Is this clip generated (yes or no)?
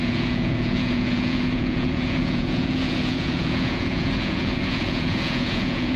yes